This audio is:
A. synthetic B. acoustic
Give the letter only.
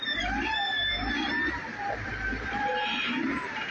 A